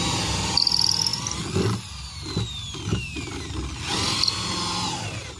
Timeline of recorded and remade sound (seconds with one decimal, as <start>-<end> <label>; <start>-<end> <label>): 0.0-5.4 recorded